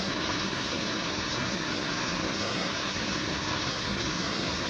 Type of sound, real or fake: fake